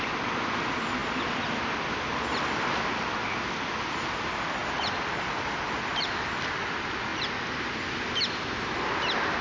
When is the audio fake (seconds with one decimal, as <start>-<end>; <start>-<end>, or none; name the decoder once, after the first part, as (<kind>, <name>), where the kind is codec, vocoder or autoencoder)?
none

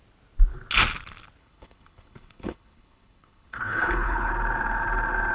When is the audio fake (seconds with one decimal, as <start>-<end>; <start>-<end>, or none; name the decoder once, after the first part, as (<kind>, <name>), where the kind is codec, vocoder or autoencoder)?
1.4-4.3 (codec, HILCodec)

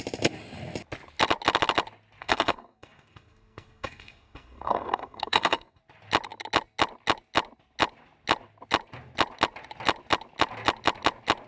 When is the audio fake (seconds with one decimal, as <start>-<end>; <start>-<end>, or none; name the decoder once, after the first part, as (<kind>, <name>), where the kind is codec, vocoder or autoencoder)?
2.2-5.8 (codec, SNAC)

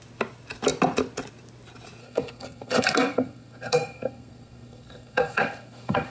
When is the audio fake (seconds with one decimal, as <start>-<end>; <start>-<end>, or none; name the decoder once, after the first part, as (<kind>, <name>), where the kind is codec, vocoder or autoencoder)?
2.0-6.1 (codec, SNAC)

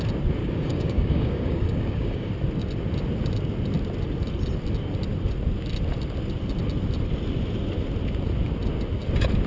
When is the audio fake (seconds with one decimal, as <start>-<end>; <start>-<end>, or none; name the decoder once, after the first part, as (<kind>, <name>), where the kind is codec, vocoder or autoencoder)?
0.4-2.3 (codec, DAC)

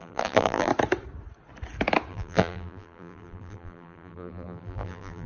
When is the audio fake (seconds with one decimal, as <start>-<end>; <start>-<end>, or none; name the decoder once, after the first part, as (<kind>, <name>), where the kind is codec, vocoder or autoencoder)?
0.0-0.7 (vocoder, BigVGAN v2); 2.1-5.3

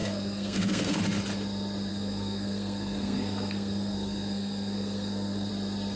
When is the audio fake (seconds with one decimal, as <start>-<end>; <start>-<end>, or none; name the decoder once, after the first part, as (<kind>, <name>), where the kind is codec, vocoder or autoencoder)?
0.0-1.0 (codec, SNAC); 1.9-5.5

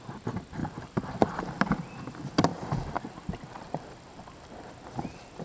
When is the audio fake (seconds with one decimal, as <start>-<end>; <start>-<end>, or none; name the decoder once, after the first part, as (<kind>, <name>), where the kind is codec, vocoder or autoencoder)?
0.6-1.4 (vocoder, BigVGAN v2); 2.5-4.7